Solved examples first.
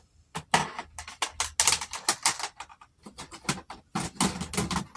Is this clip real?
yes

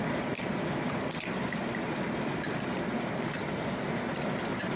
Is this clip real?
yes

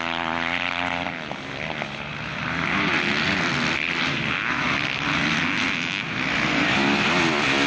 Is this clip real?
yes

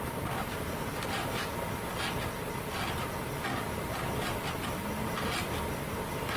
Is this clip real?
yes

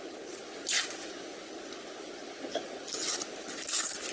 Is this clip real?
yes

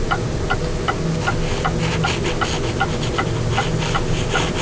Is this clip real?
yes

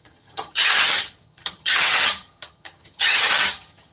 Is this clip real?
no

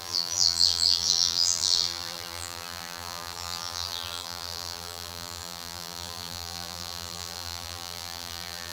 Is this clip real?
no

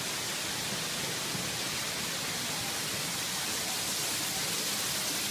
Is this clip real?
yes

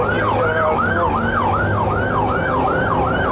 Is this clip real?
yes